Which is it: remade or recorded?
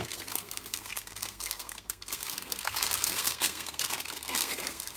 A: remade